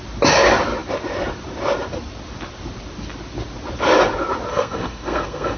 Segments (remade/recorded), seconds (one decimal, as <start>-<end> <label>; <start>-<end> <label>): 0.0-4.5 recorded; 4.5-5.6 remade